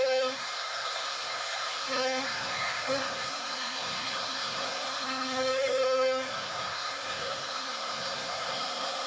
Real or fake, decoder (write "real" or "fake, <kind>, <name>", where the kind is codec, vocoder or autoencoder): fake, codec, SNAC